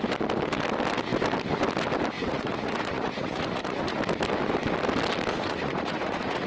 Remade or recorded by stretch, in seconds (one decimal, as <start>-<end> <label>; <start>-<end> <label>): 0.0-2.2 recorded; 2.2-4.0 remade; 4.0-5.3 recorded; 5.3-6.5 remade